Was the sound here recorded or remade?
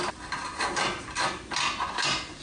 recorded